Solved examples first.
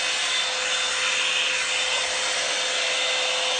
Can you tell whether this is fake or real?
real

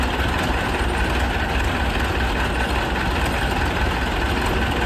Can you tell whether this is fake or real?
real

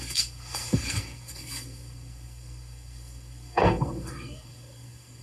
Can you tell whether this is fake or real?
fake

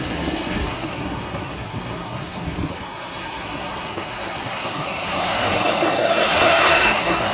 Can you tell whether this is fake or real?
fake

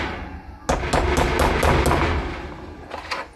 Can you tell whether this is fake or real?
real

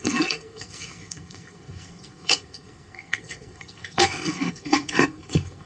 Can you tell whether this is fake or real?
fake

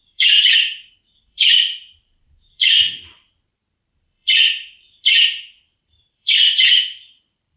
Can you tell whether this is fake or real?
fake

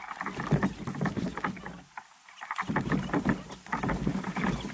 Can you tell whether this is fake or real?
real